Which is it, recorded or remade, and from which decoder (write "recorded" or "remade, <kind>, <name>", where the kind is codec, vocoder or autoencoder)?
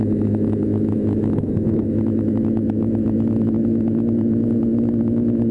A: remade, autoencoder, DAC-VAE